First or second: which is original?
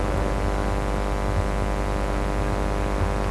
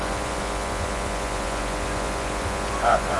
first